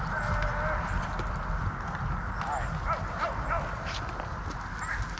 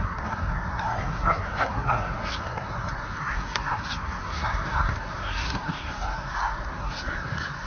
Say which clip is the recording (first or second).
first